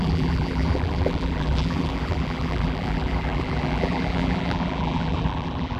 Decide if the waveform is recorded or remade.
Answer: remade